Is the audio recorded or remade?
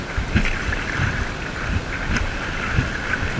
recorded